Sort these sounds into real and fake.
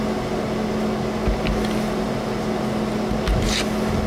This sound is real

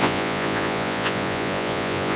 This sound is fake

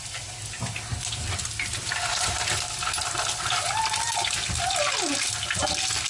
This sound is real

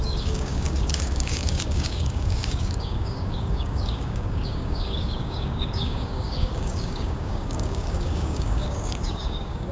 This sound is fake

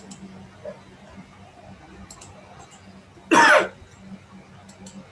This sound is real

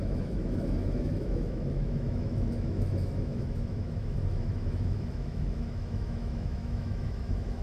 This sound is fake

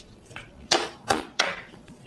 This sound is fake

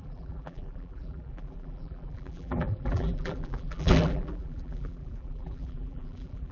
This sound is fake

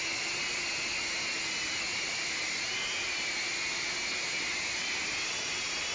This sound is real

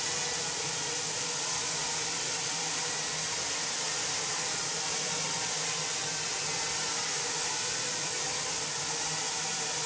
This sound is real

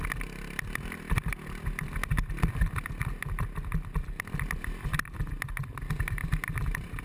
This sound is real